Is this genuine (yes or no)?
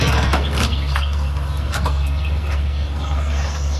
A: no